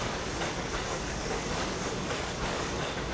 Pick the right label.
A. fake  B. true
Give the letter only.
A